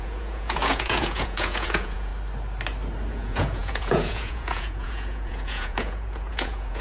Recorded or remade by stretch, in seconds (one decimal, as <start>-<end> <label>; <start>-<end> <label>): 0.0-2.1 remade; 2.1-3.1 recorded; 3.1-6.8 remade